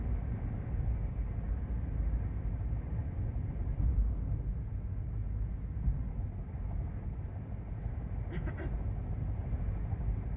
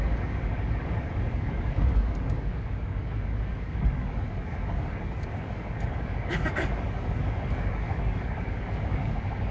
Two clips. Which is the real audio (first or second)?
first